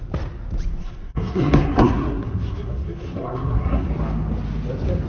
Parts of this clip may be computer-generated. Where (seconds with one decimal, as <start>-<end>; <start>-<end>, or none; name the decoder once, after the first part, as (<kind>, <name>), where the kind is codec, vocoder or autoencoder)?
0.8-3.9 (codec, SNAC)